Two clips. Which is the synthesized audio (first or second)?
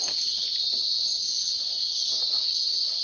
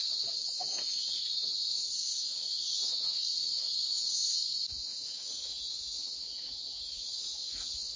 second